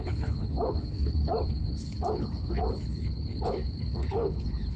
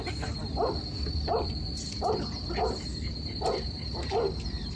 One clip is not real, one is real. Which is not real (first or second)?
first